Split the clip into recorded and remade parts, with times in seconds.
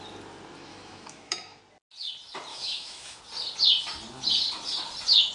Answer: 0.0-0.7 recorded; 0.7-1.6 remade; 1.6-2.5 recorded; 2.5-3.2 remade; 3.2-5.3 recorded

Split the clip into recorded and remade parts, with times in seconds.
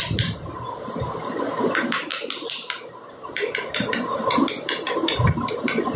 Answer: 0.0-2.1 recorded; 2.1-6.0 remade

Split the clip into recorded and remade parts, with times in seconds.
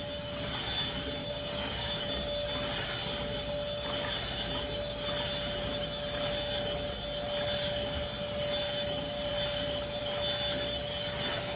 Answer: 0.0-1.2 recorded; 1.2-2.0 remade; 2.0-11.6 recorded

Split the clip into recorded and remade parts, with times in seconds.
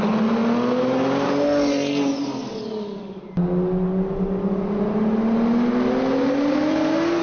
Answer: 0.0-7.2 recorded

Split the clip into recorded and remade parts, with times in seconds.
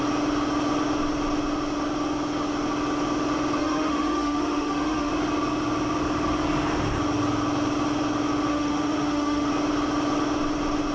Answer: 0.0-3.6 recorded; 3.6-5.1 remade; 5.1-8.5 recorded; 8.5-9.5 remade; 9.5-10.9 recorded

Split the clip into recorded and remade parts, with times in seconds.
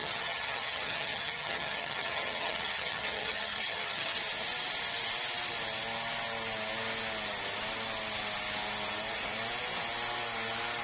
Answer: 0.0-4.2 remade; 4.2-10.8 recorded